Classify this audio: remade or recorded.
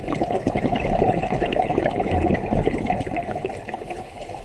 remade